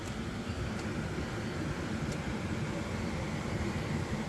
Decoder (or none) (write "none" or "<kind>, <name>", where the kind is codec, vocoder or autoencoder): none